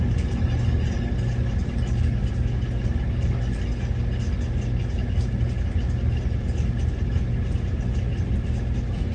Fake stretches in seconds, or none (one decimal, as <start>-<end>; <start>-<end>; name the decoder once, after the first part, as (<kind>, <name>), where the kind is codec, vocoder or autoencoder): none